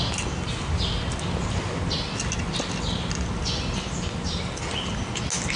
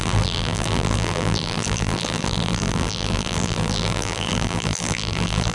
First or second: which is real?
first